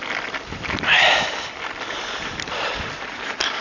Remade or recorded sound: remade